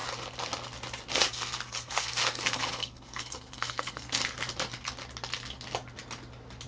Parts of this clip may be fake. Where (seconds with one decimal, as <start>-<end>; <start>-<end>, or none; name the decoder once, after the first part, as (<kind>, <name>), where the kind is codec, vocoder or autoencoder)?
1.3-4.2 (codec, SNAC)